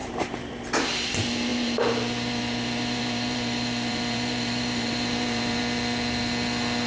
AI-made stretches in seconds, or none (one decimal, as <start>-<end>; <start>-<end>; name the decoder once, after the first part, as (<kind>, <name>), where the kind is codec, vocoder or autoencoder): 0.0-0.5 (vocoder, BigVGAN v2); 1.5-5.6